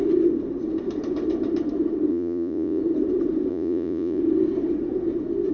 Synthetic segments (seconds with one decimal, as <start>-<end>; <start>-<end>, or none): 2.1-2.8; 3.5-4.2